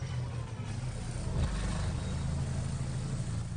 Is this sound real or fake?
real